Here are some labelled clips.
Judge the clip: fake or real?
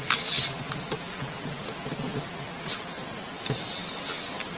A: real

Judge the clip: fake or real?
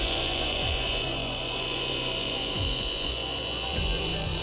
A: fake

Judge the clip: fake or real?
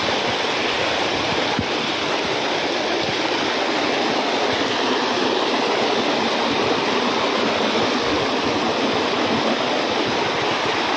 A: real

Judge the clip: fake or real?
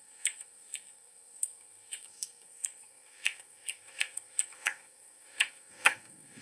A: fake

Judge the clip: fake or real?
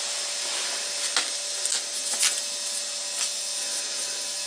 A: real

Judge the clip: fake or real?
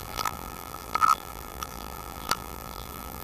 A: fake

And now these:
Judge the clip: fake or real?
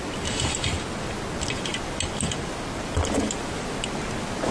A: real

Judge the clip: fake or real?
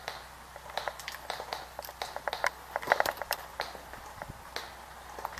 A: real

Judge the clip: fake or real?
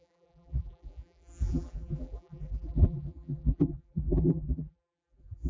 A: fake